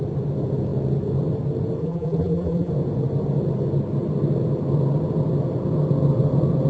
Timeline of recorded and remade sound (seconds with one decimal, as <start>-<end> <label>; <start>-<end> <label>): 0.0-1.8 recorded; 1.8-2.7 remade; 2.7-6.7 recorded

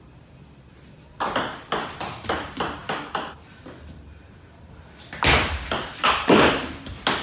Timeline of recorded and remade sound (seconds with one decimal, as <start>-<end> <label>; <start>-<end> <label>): 0.0-7.2 recorded

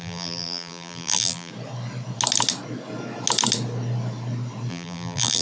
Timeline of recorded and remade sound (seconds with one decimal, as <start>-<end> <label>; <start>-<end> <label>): 0.0-1.5 remade; 1.5-4.7 recorded; 4.7-5.4 remade

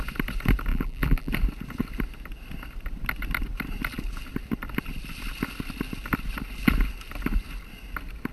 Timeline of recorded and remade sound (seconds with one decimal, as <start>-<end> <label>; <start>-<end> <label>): 0.0-0.7 recorded; 0.7-1.3 remade; 1.3-8.3 recorded

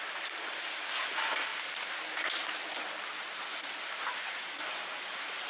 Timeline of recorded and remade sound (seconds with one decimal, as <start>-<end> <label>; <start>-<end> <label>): 0.0-1.5 remade; 1.5-3.2 recorded; 3.2-5.5 remade

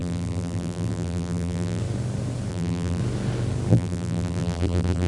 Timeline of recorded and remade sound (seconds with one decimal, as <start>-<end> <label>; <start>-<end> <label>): 0.0-1.8 remade; 1.8-2.5 recorded; 2.5-3.0 remade; 3.0-3.7 recorded; 3.7-5.1 remade

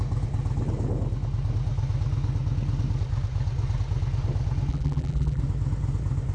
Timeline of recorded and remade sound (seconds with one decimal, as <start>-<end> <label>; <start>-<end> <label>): 0.0-4.7 recorded; 4.7-5.4 remade; 5.4-6.3 recorded